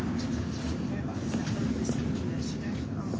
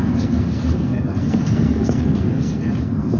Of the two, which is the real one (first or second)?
first